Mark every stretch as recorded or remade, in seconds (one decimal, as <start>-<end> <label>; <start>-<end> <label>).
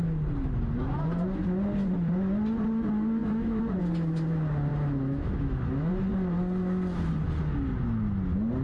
0.0-3.2 recorded; 3.2-3.8 remade; 3.8-4.7 recorded; 4.7-5.9 remade; 5.9-8.6 recorded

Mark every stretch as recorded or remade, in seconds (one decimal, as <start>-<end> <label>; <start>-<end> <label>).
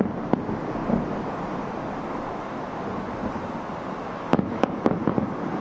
0.0-4.3 recorded; 4.3-4.9 remade; 4.9-5.6 recorded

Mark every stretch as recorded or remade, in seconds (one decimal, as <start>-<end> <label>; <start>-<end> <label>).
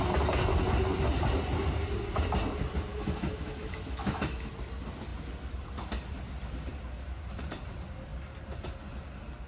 0.0-2.9 recorded; 2.9-4.5 remade; 4.5-9.5 recorded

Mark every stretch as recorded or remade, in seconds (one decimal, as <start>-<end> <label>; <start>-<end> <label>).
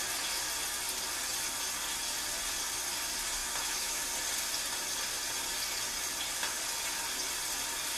0.0-3.4 recorded; 3.4-4.0 remade; 4.0-8.0 recorded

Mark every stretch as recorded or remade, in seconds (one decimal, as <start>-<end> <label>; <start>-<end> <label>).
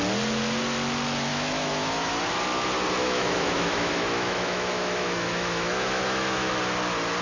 0.0-1.3 recorded; 1.3-2.1 remade; 2.1-3.0 recorded; 3.0-6.5 remade; 6.5-7.2 recorded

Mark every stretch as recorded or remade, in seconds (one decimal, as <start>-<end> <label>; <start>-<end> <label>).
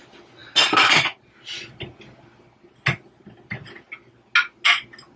0.0-5.2 recorded